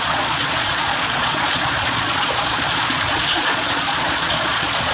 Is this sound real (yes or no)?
no